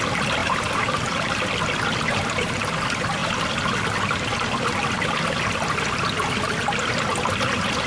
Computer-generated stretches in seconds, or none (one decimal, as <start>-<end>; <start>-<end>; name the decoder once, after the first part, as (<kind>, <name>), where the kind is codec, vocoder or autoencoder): 0.4-1.5 (vocoder, BigVGAN v2); 2.1-2.7